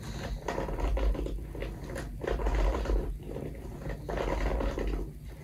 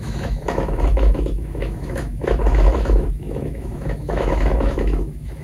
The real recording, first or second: first